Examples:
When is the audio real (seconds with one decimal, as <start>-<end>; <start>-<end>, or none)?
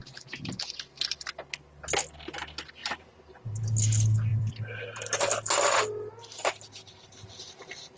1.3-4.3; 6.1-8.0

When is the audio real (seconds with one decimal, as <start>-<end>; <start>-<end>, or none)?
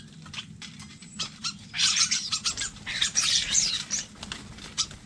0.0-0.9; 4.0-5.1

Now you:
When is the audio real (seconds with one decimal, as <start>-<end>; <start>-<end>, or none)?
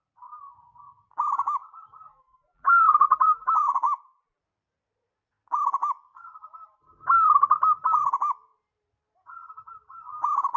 0.0-2.1; 4.4-10.6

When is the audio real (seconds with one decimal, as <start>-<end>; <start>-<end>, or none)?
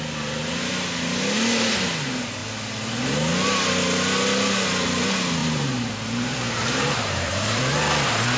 0.0-5.4; 7.6-8.4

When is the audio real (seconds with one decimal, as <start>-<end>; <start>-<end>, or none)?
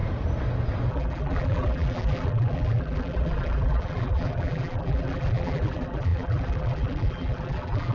0.0-0.9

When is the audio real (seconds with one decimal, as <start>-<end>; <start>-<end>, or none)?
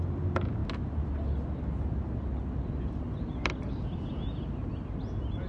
0.0-5.5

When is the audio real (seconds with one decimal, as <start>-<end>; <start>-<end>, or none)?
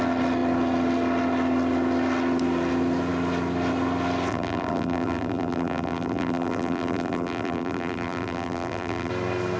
0.0-4.3; 9.1-9.6